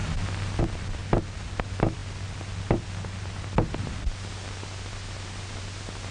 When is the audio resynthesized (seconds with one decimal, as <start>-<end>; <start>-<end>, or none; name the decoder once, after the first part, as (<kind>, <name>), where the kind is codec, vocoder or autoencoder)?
none